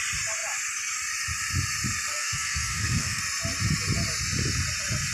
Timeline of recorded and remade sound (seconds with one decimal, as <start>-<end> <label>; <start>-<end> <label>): 0.0-2.1 recorded; 2.1-3.2 remade; 3.2-5.1 recorded